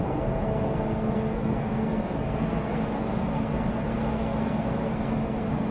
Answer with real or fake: fake